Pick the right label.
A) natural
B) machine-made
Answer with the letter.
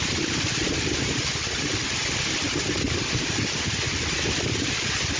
A